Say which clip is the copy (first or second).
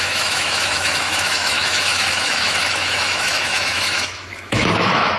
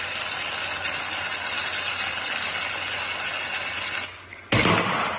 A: first